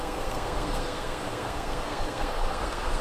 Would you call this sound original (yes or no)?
no